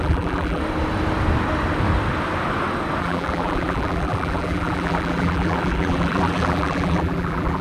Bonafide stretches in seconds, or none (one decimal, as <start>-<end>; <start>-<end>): 0.6-3.0